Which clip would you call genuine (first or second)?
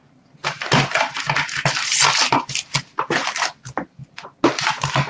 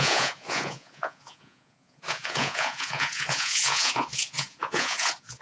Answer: first